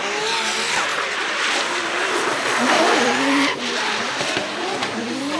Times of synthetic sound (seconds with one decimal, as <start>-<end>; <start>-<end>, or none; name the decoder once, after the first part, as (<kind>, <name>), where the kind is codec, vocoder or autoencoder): 0.9-4.1 (vocoder, BigVGAN v2)